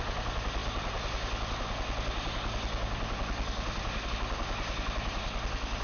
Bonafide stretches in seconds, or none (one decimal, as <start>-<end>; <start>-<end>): 0.0-5.8